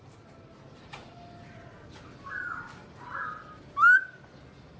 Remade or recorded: recorded